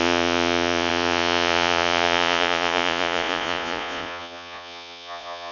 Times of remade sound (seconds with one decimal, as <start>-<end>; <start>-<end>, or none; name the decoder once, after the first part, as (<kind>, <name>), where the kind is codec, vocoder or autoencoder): 0.0-5.5 (vocoder, Vocos)